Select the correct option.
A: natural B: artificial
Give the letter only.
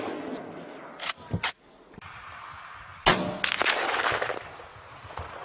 A